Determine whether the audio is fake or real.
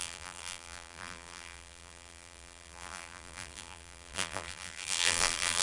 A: fake